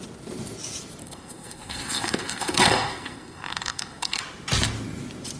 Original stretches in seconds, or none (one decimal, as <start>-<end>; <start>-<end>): 0.0-1.0; 4.2-5.4